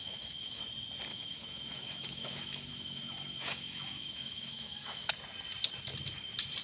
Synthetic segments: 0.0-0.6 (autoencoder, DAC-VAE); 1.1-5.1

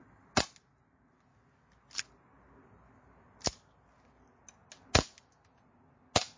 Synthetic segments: none

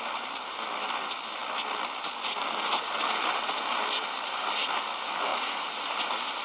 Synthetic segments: 5.3-5.8 (vocoder, Vocos)